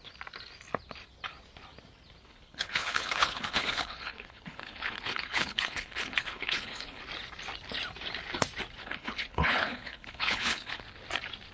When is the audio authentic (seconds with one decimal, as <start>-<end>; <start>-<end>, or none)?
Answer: 0.0-2.2; 7.0-8.8; 10.8-11.5